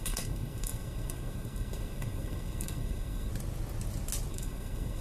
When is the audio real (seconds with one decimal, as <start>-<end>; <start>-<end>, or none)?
3.3-4.3